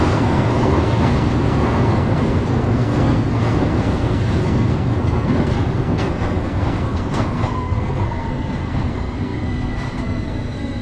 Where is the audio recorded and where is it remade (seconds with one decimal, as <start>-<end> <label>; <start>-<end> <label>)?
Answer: 0.0-10.8 remade